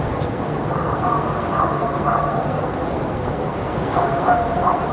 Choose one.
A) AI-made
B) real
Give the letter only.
A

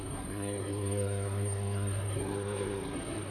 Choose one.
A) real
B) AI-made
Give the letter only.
B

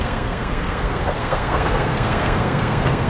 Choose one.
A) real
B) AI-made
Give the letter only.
B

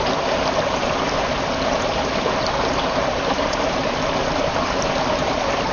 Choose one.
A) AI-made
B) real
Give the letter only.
B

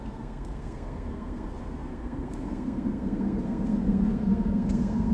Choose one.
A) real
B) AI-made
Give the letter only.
B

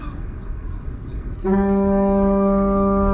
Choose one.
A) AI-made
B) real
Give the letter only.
A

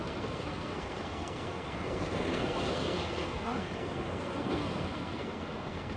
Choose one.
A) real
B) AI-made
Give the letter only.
B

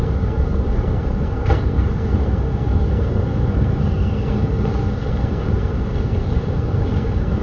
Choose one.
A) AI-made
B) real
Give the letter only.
A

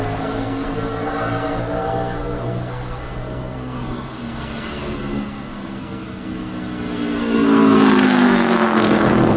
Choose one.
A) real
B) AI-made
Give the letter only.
B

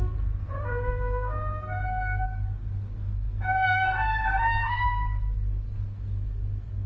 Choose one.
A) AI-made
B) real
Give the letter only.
A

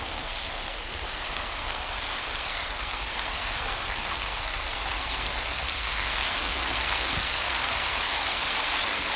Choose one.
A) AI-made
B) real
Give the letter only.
A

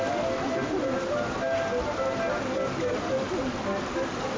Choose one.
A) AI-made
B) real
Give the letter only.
B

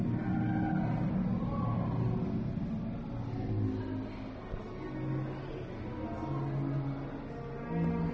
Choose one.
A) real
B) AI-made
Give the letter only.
A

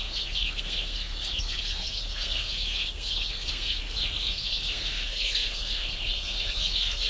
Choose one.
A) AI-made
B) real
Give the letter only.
A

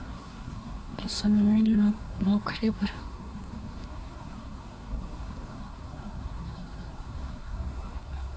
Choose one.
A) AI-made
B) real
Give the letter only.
A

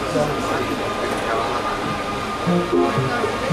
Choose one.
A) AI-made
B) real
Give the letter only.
B